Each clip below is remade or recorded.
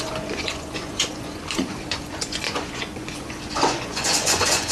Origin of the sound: remade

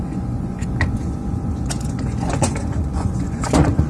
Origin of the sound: remade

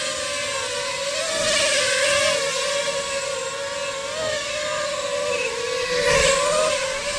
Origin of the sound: recorded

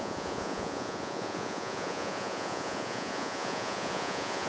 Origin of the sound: remade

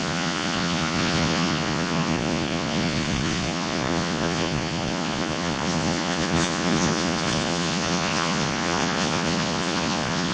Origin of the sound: remade